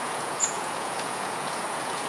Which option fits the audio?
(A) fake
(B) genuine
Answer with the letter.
A